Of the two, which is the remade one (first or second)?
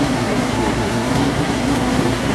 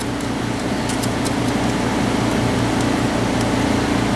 first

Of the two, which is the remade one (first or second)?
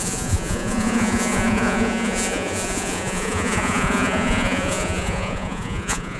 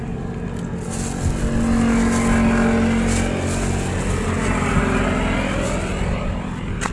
first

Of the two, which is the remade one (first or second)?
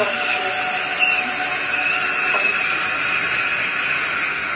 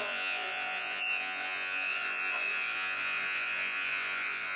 second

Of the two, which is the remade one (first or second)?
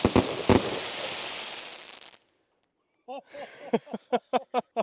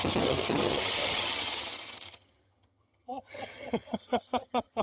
second